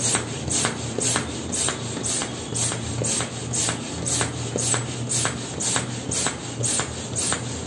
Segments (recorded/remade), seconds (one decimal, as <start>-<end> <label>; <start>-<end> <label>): 0.0-7.7 recorded